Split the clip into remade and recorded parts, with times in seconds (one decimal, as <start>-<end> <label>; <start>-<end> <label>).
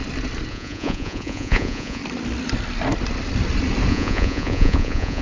0.0-0.5 recorded; 0.5-2.0 remade; 2.0-3.9 recorded; 3.9-5.2 remade